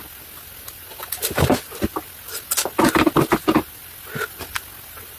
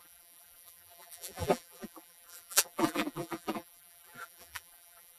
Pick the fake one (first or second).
second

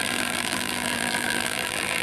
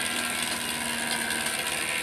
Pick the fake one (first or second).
first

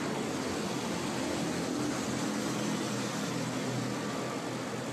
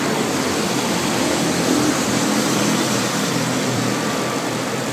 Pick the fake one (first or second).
second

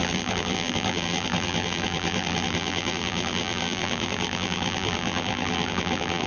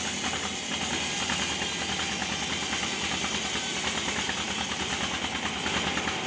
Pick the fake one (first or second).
first